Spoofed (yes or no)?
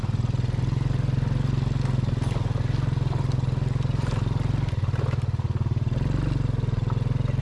no